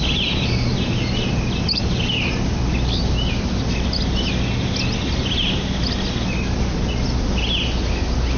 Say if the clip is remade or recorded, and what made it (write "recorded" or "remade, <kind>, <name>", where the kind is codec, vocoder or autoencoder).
recorded